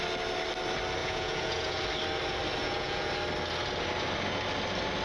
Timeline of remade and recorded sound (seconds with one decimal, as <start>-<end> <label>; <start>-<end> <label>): 0.0-1.0 recorded; 1.0-1.8 remade; 1.8-2.6 recorded; 2.6-3.1 remade; 3.1-5.0 recorded